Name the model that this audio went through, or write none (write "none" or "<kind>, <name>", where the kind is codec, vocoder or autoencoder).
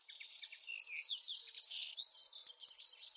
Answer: none